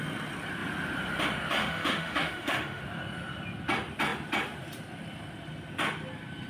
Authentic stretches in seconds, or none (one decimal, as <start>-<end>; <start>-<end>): 0.0-1.6; 2.8-6.5